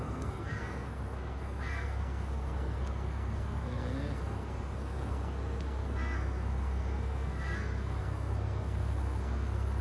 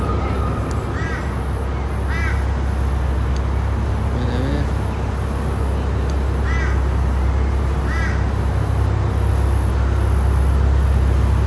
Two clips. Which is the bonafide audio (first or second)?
second